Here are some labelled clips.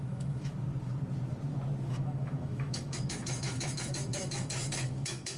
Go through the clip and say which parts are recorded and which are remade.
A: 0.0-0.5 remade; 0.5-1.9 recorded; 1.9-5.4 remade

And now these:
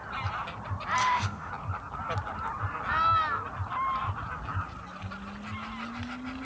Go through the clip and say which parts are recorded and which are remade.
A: 0.0-1.0 recorded; 1.0-1.5 remade; 1.5-6.4 recorded

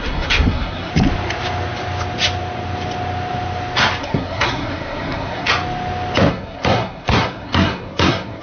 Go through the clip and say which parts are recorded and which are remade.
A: 0.0-0.9 remade; 0.9-4.0 recorded; 4.0-5.5 remade; 5.5-6.3 recorded; 6.3-8.4 remade

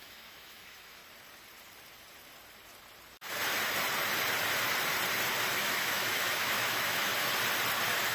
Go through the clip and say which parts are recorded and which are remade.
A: 0.0-1.0 remade; 1.0-5.5 recorded; 5.5-7.1 remade; 7.1-8.1 recorded

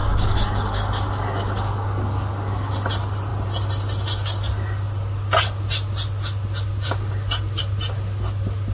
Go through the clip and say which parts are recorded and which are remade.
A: 0.0-2.7 remade; 2.7-8.7 recorded

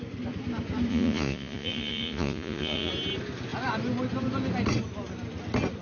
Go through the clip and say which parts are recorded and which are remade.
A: 0.0-0.9 recorded; 0.9-2.9 remade; 2.9-5.8 recorded

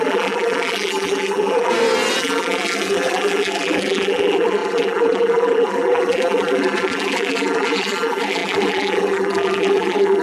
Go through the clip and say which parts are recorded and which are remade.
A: 0.0-1.7 remade; 1.7-2.2 recorded; 2.2-10.2 remade